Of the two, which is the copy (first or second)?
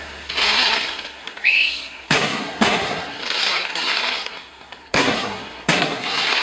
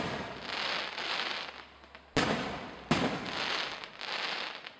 first